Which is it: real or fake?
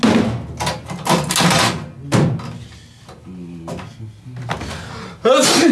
real